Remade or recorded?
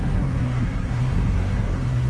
remade